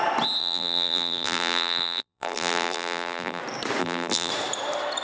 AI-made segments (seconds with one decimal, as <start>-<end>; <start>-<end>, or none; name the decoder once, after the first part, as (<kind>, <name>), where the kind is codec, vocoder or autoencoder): 0.4-3.4 (vocoder, BigVGAN v2); 3.8-4.3